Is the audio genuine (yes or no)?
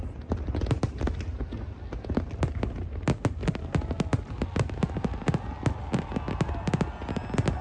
yes